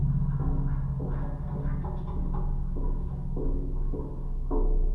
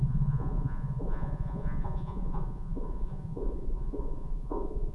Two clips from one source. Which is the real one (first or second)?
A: first